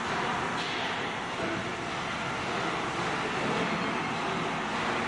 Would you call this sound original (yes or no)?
yes